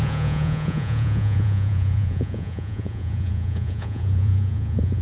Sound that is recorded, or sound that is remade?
remade